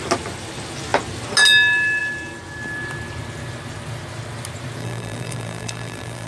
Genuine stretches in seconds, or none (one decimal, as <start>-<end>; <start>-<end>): 0.0-4.8